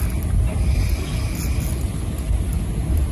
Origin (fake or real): real